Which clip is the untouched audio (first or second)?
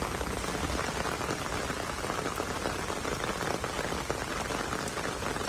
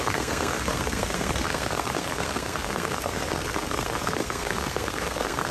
first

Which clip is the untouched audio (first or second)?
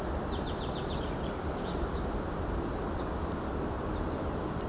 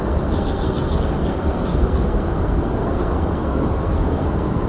first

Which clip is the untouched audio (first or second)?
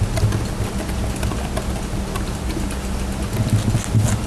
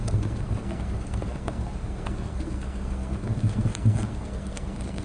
first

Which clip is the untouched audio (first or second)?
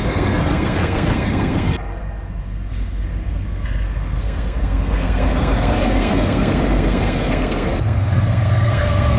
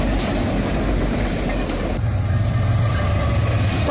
second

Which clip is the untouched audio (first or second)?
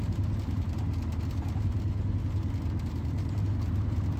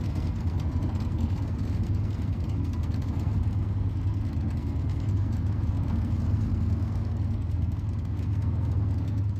first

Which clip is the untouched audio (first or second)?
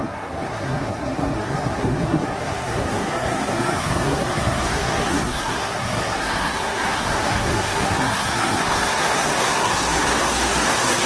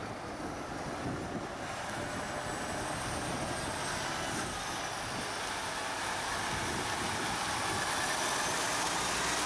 second